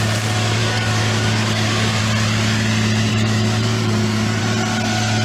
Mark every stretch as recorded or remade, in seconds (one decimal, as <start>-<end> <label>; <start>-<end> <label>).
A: 0.0-0.6 recorded; 0.6-2.0 remade; 2.0-3.1 recorded; 3.1-4.4 remade; 4.4-5.2 recorded